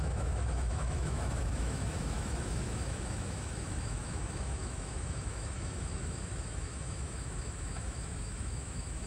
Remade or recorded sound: remade